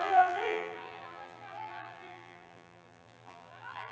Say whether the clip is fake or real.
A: fake